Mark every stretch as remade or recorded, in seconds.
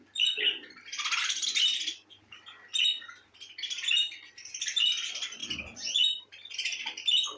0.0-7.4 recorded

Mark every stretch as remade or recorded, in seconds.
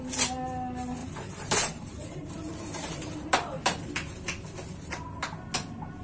0.0-1.0 recorded; 1.0-3.9 remade; 3.9-6.0 recorded